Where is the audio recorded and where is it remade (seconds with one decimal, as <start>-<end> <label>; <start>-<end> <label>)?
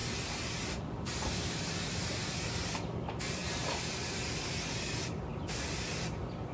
0.0-0.8 recorded; 0.8-5.3 remade; 5.3-6.0 recorded; 6.0-6.5 remade